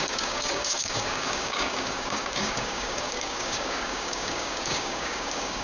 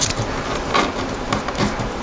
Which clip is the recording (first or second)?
second